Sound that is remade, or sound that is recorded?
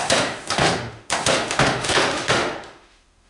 remade